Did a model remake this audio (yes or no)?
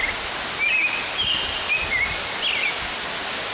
no